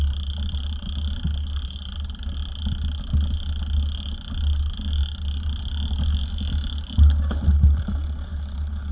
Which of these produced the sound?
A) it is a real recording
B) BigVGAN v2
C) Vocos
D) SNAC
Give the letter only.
A